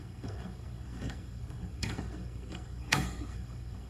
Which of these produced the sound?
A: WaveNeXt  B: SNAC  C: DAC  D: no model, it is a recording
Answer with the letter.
B